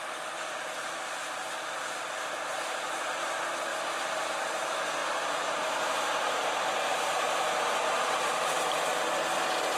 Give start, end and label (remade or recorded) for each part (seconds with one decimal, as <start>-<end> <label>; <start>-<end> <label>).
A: 0.0-3.7 recorded; 3.7-4.2 remade; 4.2-5.0 recorded; 5.0-8.8 remade; 8.8-9.8 recorded